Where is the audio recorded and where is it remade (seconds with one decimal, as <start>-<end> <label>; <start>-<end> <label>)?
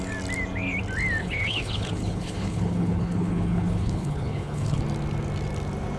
0.0-1.2 recorded; 1.2-4.8 remade; 4.8-6.0 recorded